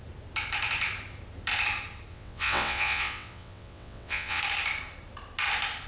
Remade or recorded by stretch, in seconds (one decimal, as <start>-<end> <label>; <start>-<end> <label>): 0.0-2.1 recorded; 2.1-4.4 remade; 4.4-5.9 recorded